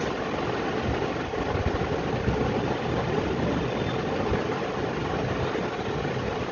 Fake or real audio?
real